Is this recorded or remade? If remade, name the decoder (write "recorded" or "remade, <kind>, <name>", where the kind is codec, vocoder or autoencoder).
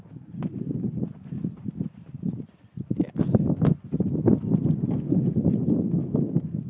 recorded